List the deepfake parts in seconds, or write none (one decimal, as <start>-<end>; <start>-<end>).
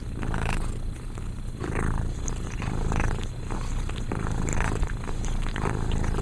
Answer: 4.5-5.2